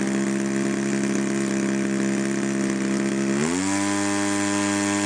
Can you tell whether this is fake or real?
real